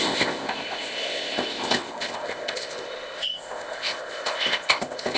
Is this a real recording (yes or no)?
no